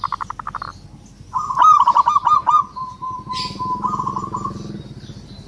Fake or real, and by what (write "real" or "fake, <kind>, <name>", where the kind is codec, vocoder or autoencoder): real